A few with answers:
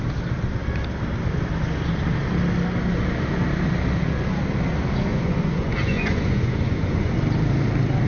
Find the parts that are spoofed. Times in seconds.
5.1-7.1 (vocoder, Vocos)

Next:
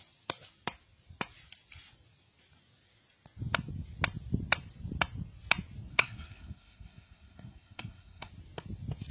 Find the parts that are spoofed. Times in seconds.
5.9-8.3 (codec, SNAC)

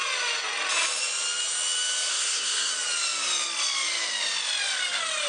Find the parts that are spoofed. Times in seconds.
2.1-2.7 (codec, SNAC)